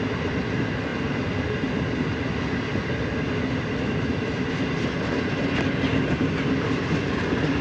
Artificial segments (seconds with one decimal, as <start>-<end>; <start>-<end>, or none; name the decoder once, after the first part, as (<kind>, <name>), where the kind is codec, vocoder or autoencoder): none

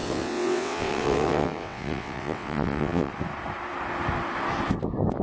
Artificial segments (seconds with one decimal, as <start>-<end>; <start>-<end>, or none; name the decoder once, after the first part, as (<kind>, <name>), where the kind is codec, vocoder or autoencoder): 0.0-3.1 (vocoder, WaveNeXt)

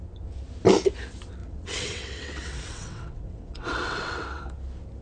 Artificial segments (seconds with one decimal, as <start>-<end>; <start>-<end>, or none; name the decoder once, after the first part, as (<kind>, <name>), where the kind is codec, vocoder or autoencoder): 1.4-4.4 (vocoder, WaveNeXt)

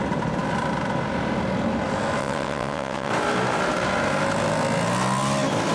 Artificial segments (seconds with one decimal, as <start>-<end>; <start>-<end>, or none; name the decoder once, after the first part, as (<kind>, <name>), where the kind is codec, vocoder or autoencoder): 2.2-3.1 (vocoder, WaveNeXt)